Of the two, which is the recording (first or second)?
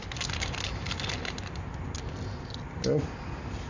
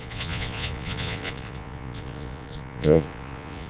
first